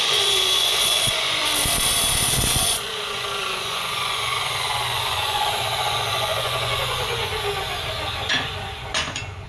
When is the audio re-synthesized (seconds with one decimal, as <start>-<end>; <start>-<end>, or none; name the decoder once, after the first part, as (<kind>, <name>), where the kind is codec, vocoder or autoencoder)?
0.0-1.5 (vocoder, Vocos); 2.3-7.3; 8.2-9.5